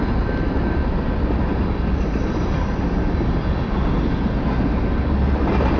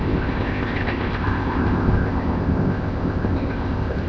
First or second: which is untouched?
first